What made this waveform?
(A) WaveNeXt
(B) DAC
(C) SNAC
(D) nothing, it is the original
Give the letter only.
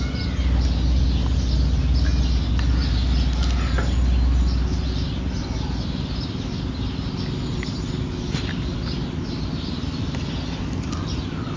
D